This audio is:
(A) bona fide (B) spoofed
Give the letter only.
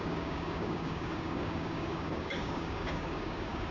B